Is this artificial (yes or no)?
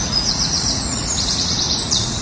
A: yes